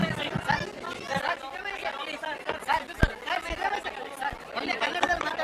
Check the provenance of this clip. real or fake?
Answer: real